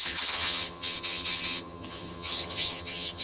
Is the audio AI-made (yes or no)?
yes